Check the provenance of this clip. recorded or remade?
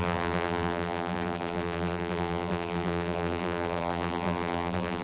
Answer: remade